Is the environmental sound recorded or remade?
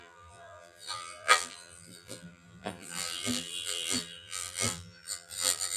remade